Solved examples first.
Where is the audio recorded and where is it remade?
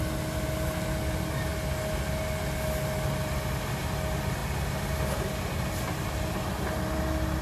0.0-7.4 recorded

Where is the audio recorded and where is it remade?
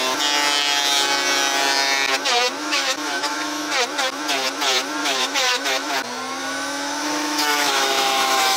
0.0-2.6 recorded; 2.6-3.6 remade; 3.6-5.0 recorded; 5.0-5.9 remade; 5.9-6.4 recorded; 6.4-8.6 remade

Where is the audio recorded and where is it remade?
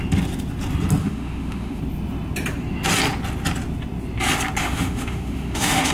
0.0-1.0 recorded; 1.0-1.8 remade; 1.8-4.6 recorded; 4.6-5.9 remade